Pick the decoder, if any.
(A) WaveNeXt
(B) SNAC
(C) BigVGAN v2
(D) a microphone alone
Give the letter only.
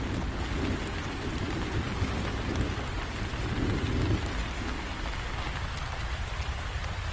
D